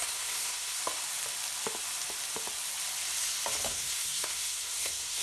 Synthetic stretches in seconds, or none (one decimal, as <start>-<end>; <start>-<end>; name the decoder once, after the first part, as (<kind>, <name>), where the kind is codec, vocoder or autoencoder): 0.0-0.8 (codec, SNAC); 3.7-5.2